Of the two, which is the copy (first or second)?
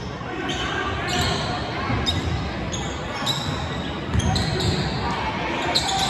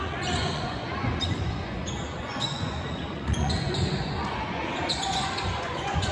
second